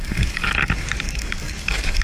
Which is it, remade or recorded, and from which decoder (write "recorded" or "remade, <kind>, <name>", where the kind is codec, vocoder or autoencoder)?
remade, codec, DAC